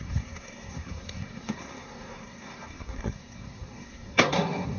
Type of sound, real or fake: fake